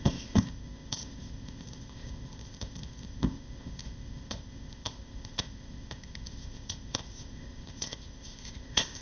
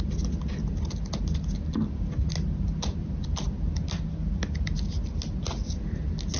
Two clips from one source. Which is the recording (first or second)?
second